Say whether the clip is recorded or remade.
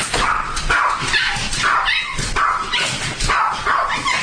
recorded